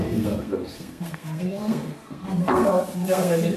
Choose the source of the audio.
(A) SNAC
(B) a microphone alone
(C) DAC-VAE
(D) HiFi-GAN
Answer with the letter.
A